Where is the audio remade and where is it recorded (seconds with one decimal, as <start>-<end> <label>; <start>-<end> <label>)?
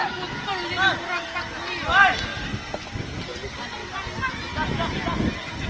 0.0-5.7 recorded